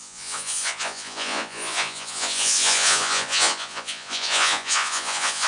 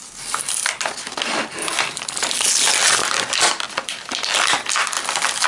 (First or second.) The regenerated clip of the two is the first